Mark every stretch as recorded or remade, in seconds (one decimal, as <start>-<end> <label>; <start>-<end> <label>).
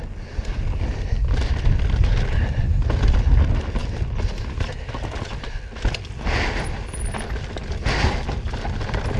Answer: 0.0-9.2 recorded